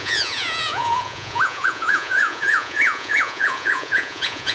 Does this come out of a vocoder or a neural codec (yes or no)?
yes